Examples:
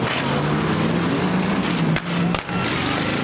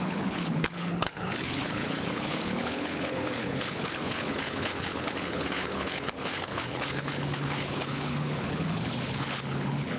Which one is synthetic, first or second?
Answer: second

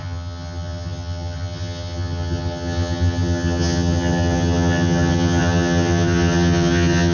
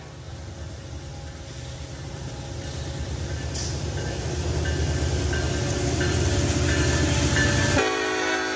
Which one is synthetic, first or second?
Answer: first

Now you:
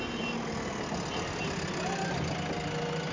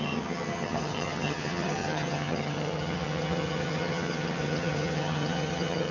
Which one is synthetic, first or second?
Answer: second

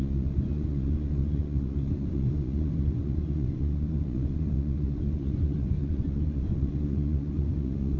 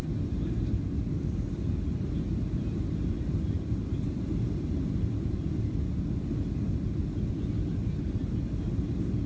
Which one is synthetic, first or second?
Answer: first